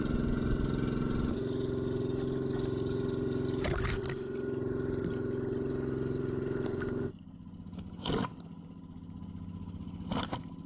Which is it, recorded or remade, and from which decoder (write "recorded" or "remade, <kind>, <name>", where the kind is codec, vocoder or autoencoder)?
recorded